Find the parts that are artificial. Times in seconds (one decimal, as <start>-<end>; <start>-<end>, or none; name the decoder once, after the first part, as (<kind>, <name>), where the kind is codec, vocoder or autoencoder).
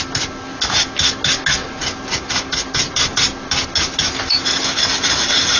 none